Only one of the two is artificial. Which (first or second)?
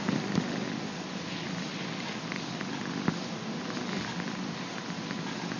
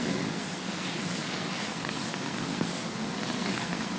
second